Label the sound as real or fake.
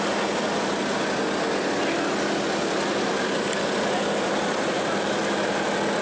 real